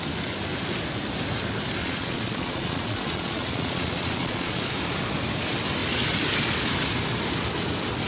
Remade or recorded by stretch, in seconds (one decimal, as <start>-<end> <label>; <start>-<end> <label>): 0.0-1.8 recorded; 1.8-4.6 remade; 4.6-8.1 recorded